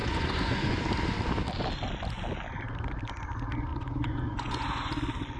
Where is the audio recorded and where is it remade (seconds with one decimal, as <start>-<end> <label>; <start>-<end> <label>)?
0.0-0.8 remade; 0.8-3.7 recorded; 3.7-4.9 remade; 4.9-5.4 recorded